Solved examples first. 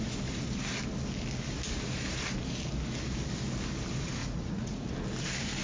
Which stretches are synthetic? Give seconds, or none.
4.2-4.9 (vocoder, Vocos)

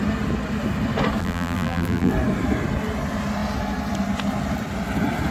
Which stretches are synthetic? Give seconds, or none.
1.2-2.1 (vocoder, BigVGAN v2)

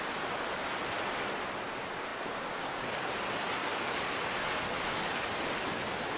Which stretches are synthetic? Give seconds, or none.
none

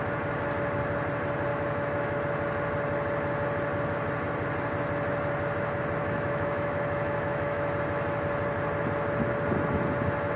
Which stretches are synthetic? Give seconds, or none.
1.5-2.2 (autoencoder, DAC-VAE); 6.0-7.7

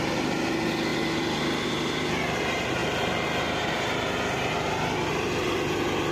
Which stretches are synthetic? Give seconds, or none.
none

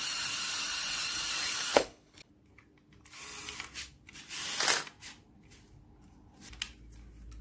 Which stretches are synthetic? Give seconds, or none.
1.7-2.3 (codec, HILCodec)

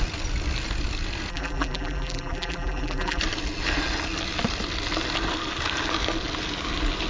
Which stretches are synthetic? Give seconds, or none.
1.3-3.2 (vocoder, BigVGAN v2)